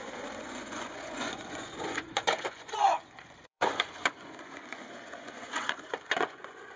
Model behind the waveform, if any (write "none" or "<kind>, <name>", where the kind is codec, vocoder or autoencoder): vocoder, Vocos